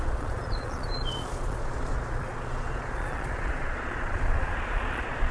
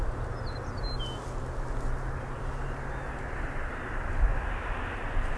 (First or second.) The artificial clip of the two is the first